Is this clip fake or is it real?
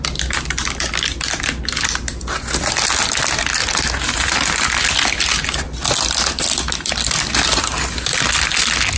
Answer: real